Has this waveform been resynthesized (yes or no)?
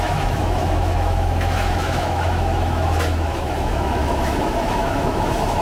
yes